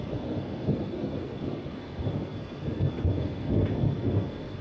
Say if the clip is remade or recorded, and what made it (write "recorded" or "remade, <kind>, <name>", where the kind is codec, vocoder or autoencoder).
remade, codec, SNAC